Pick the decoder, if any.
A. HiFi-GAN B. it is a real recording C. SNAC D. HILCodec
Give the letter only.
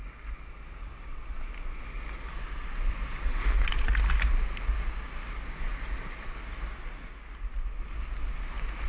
B